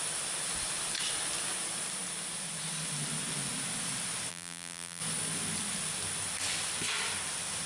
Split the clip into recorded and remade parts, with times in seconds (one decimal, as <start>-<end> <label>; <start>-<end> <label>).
0.0-4.3 recorded; 4.3-5.0 remade; 5.0-7.7 recorded